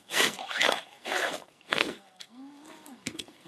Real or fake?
fake